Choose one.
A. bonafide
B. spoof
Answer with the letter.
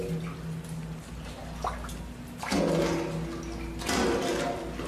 A